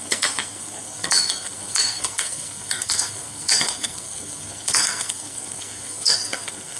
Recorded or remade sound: remade